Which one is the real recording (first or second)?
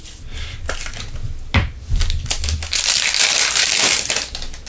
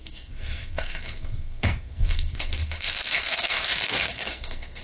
first